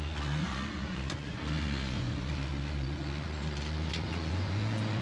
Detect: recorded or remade remade